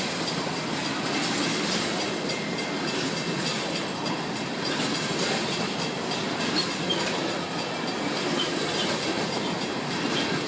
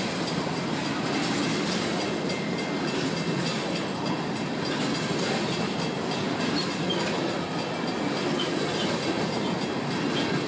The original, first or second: second